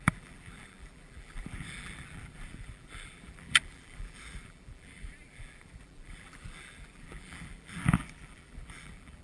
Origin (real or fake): fake